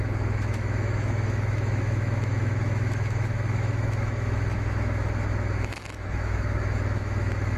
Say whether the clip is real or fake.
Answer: fake